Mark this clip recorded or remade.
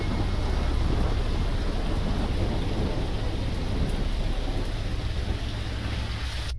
recorded